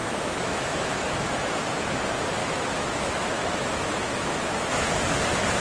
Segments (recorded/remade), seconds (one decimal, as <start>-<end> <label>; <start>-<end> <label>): 0.0-2.0 remade; 2.0-2.4 recorded; 2.4-5.0 remade; 5.0-5.6 recorded